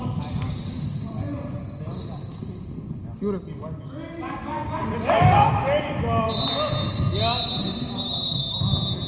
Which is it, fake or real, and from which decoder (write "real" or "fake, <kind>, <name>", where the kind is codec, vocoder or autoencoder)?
real